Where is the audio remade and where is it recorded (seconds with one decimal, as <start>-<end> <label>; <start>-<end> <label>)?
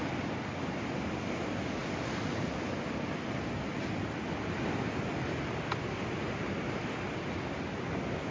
0.0-8.3 recorded